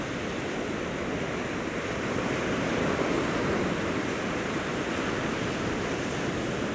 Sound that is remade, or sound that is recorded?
recorded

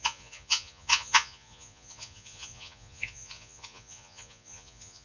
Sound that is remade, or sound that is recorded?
remade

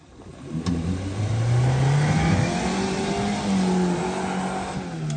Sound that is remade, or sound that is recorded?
recorded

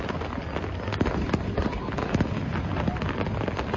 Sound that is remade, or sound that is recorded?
recorded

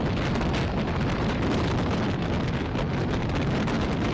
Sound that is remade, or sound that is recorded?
recorded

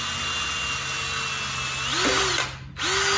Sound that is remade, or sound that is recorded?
recorded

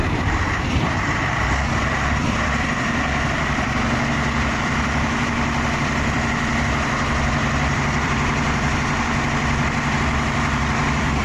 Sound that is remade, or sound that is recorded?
remade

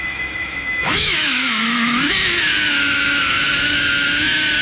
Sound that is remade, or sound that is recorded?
remade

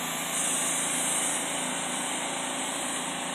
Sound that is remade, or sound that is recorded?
recorded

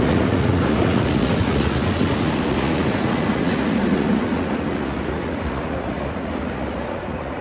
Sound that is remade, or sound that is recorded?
remade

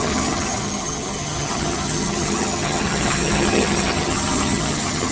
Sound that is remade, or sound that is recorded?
remade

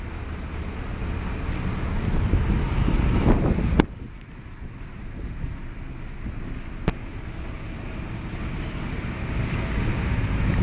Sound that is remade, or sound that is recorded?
recorded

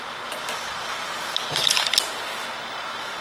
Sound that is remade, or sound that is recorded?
recorded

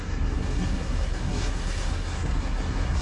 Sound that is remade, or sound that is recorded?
remade